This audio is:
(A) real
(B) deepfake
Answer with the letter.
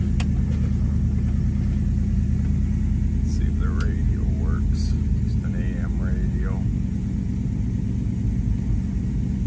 A